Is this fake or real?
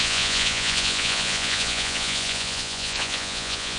fake